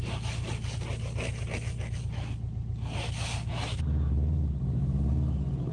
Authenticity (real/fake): real